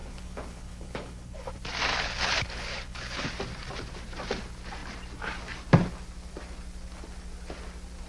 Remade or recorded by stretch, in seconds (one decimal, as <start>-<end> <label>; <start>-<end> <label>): 0.0-1.5 remade; 1.5-1.9 recorded; 1.9-3.3 remade; 3.3-8.1 recorded